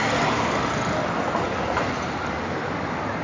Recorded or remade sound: recorded